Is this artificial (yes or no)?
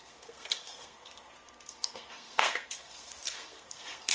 yes